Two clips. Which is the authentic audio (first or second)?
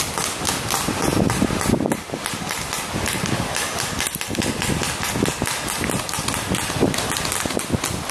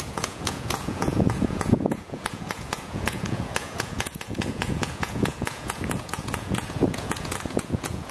first